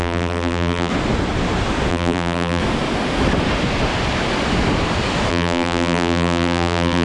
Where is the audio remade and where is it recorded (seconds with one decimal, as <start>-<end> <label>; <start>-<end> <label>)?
0.0-0.9 remade; 0.9-1.9 recorded; 1.9-2.6 remade; 2.6-5.3 recorded; 5.3-7.0 remade